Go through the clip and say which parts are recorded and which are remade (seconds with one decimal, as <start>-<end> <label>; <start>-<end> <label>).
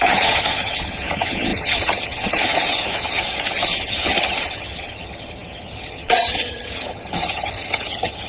0.0-8.3 remade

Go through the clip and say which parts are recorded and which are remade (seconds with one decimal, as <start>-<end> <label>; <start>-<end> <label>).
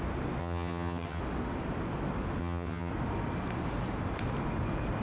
0.0-0.4 recorded; 0.4-1.2 remade; 1.2-2.4 recorded; 2.4-2.9 remade; 2.9-5.0 recorded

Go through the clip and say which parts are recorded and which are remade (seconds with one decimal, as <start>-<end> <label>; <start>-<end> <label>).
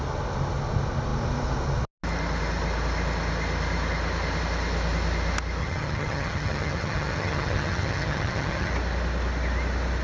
0.0-5.6 recorded; 5.6-8.7 remade; 8.7-10.0 recorded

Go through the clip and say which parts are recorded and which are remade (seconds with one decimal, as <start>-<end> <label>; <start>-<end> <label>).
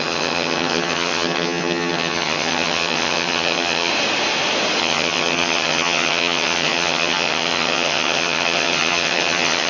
0.0-3.9 remade; 3.9-4.8 recorded; 4.8-9.7 remade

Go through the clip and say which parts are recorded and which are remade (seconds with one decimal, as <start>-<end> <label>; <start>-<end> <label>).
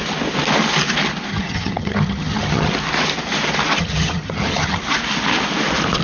0.0-1.3 recorded; 1.3-2.7 remade; 2.7-3.8 recorded; 3.8-4.8 remade; 4.8-6.0 recorded